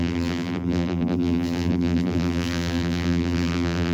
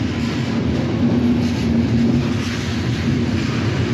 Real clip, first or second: second